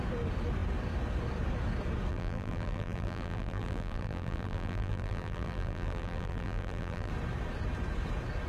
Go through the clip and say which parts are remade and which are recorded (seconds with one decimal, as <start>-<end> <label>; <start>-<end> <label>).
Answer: 0.0-2.1 recorded; 2.1-7.1 remade; 7.1-8.5 recorded